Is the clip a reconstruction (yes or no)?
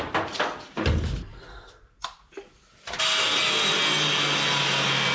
no